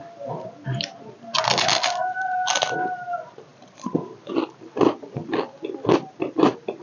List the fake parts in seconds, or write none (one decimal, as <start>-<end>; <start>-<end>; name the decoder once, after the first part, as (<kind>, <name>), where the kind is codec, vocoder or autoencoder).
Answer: none